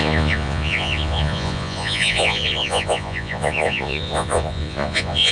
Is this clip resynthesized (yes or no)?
yes